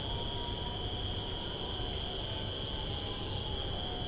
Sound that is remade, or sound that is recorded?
recorded